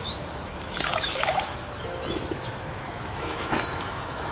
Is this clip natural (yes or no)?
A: no